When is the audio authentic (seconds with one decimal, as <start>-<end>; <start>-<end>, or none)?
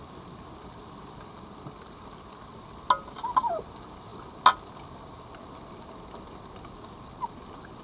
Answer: 0.0-7.8